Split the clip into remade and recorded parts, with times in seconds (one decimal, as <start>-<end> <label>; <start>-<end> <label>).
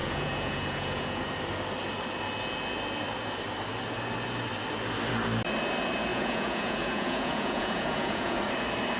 0.0-1.3 remade; 1.3-6.1 recorded; 6.1-8.4 remade; 8.4-9.0 recorded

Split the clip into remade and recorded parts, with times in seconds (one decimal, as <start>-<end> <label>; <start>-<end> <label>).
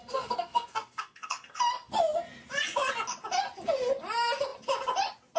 0.0-1.6 remade; 1.6-5.4 recorded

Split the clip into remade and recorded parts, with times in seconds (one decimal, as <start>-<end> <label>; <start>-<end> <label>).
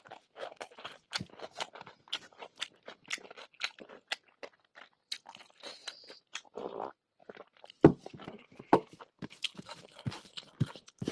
0.0-11.1 recorded